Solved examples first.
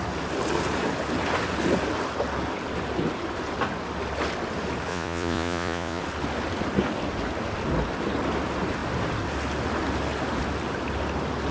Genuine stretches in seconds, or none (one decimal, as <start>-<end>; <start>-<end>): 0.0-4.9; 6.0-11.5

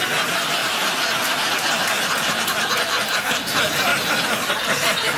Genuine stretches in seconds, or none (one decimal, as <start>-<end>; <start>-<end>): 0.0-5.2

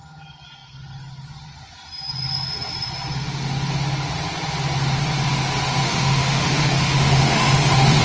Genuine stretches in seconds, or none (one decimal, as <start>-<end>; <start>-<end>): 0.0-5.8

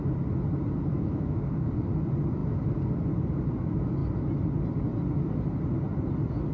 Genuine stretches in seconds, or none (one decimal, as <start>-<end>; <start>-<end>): 0.0-0.9; 1.7-6.5

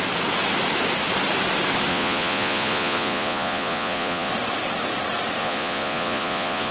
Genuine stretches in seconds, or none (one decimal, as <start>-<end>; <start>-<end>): 0.0-1.9; 4.3-5.4

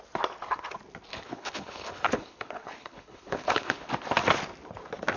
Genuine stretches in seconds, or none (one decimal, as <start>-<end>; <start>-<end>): 0.0-1.1; 3.9-5.2

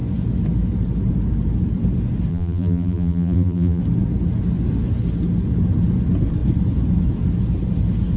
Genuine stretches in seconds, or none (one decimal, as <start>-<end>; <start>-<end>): 0.0-2.3; 3.8-8.2